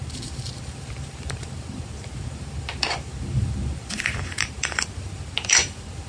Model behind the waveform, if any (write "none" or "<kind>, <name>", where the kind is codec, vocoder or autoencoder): vocoder, BigVGAN v2